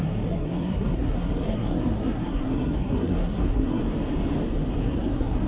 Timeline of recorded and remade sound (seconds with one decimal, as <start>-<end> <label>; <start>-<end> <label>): 0.0-3.8 remade; 3.8-4.8 recorded; 4.8-5.5 remade